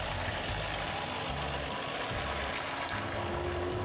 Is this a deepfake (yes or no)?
no